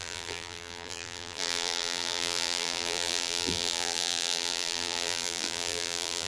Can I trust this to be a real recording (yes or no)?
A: no